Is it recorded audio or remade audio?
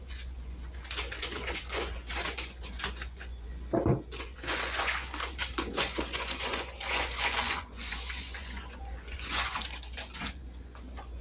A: remade